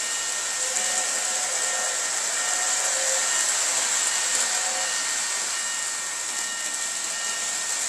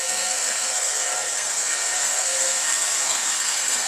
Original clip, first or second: first